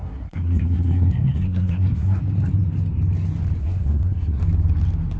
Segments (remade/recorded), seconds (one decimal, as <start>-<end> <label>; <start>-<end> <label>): 0.0-2.2 remade; 2.2-3.6 recorded; 3.6-4.4 remade; 4.4-5.2 recorded